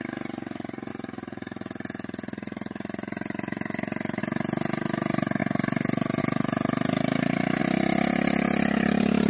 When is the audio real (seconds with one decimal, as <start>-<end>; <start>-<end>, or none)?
0.0-0.9; 4.2-9.3